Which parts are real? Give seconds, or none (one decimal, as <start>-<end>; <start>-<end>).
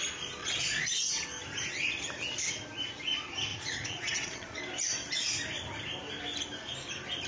0.0-0.4; 0.9-3.5; 4.6-7.3